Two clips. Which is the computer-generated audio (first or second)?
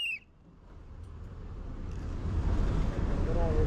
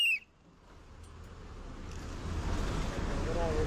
first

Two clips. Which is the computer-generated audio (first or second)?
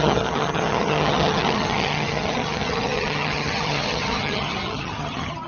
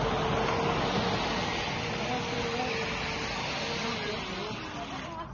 first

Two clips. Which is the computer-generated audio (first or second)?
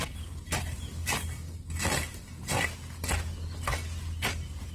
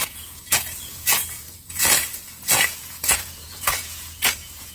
second